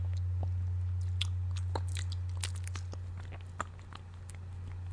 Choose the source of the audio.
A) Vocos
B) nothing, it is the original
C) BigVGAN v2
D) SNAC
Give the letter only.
B